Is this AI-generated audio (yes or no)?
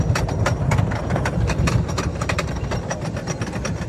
no